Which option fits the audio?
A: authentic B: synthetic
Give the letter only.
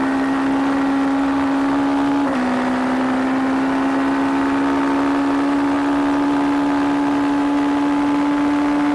A